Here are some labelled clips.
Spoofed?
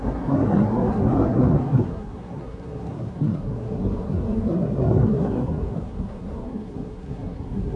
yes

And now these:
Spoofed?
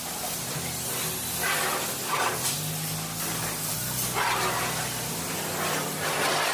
no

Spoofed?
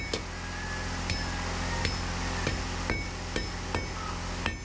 no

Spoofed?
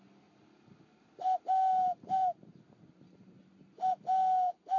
no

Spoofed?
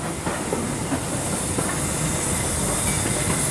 no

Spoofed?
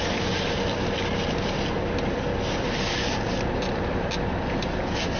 yes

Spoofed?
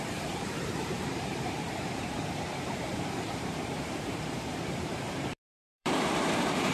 yes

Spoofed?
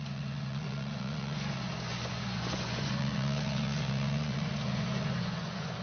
yes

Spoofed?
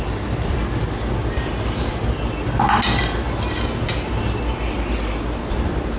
no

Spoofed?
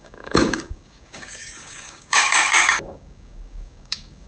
yes